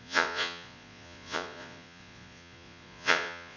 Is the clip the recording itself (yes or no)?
no